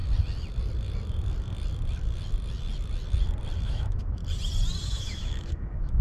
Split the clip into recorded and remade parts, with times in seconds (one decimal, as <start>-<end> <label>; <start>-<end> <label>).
0.0-3.6 recorded; 3.6-4.2 remade; 4.2-4.8 recorded; 4.8-6.0 remade